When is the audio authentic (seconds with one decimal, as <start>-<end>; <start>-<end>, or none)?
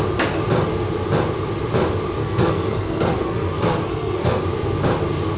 0.0-2.2; 4.4-5.4